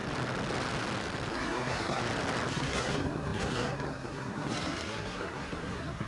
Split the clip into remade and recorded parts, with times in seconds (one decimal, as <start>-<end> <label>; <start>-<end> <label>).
0.0-1.3 recorded; 1.3-2.0 remade; 2.0-2.5 recorded; 2.5-6.1 remade